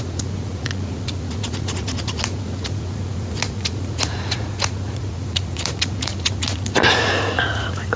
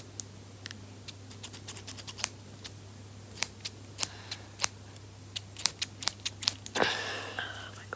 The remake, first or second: first